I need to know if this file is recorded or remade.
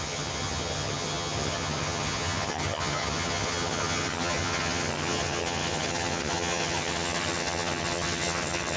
remade